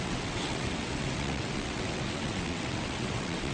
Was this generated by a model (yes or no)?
yes